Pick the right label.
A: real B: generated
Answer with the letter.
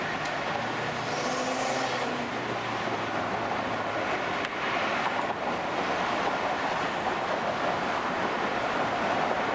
A